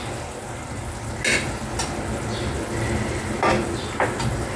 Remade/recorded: recorded